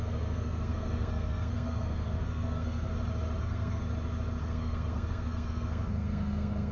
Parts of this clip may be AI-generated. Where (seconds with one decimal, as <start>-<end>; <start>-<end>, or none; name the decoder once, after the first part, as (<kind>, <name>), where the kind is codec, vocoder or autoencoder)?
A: 0.0-2.9 (codec, SNAC); 3.4-3.8; 4.4-6.7